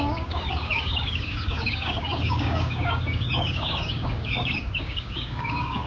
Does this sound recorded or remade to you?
remade